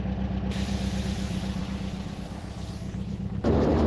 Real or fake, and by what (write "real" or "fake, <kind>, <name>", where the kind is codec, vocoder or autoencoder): fake, vocoder, BigVGAN v2